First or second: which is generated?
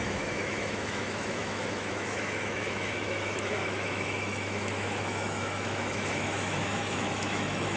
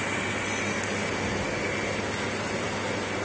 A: first